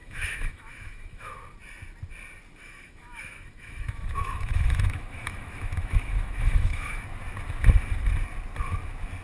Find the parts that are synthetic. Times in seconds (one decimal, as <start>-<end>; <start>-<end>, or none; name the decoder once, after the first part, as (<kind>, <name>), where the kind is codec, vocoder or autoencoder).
0.0-1.3 (autoencoder, DAC-VAE); 2.6-7.0